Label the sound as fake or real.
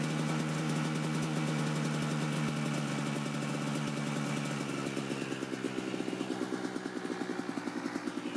real